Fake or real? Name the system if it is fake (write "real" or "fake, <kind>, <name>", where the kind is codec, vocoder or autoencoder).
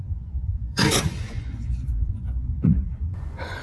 fake, vocoder, Vocos